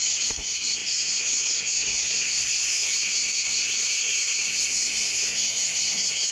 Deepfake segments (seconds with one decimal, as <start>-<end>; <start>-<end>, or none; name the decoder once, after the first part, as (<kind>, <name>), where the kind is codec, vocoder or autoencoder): 0.0-6.3 (codec, SNAC)